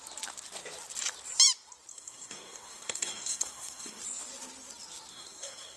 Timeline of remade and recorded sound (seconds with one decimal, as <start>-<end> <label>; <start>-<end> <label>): 0.0-1.9 recorded; 1.9-4.0 remade; 4.0-5.1 recorded; 5.1-5.8 remade